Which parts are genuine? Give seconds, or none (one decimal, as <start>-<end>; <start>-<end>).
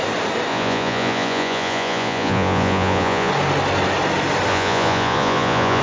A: 0.0-0.5; 3.3-4.5